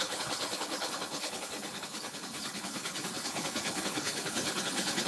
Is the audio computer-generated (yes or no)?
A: yes